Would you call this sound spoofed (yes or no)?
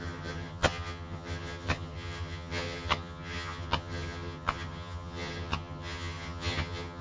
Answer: yes